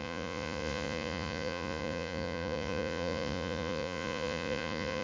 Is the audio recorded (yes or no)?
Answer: no